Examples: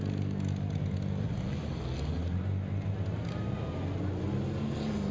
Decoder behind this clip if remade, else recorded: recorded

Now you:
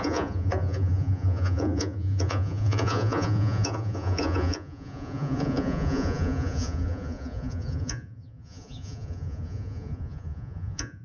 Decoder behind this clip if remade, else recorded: remade, vocoder, Vocos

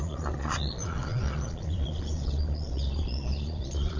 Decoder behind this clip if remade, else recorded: remade, vocoder, Vocos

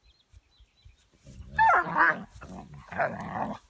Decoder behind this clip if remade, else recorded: recorded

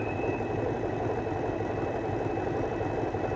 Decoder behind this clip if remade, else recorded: recorded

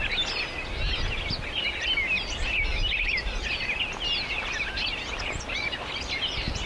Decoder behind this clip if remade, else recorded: recorded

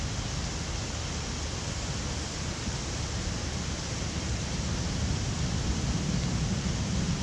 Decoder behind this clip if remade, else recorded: recorded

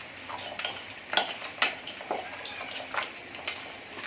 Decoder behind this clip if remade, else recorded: recorded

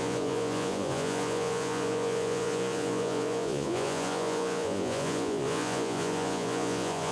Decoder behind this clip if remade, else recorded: remade, vocoder, Vocos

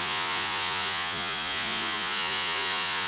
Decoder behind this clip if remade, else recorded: remade, vocoder, Vocos